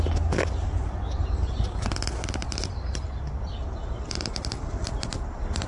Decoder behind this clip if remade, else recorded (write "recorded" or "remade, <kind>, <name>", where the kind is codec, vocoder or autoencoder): recorded